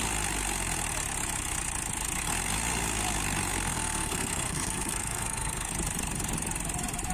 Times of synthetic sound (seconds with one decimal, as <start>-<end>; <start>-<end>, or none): 3.5-5.7